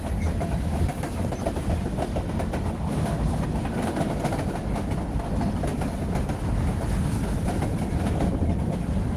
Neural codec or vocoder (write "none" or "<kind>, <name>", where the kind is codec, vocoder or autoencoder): none